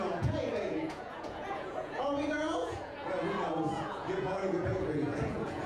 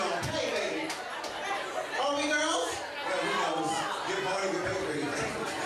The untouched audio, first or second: second